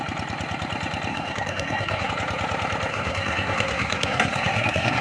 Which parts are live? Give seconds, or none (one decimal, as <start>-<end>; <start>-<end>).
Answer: 0.0-1.1; 2.1-2.9